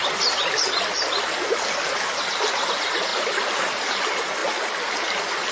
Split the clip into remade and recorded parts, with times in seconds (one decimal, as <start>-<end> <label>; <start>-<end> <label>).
0.0-5.5 recorded